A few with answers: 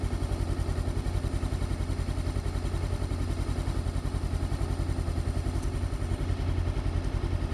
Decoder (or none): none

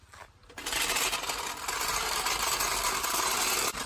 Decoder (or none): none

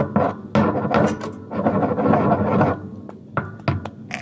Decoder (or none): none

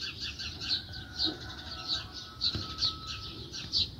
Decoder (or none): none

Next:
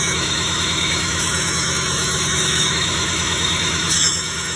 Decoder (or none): autoencoder, DAC-VAE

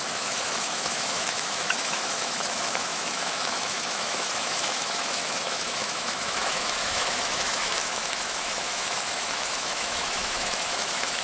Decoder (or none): autoencoder, DAC-VAE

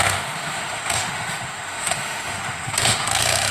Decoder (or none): autoencoder, DAC-VAE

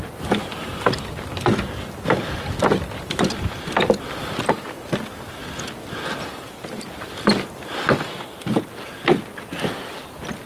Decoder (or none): none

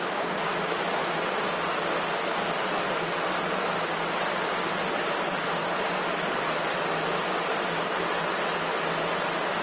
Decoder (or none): none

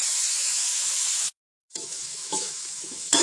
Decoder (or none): autoencoder, DAC-VAE